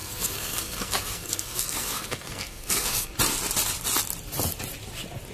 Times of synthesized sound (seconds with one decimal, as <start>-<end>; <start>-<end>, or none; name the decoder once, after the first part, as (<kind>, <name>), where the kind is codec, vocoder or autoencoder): 0.0-3.2 (codec, SNAC)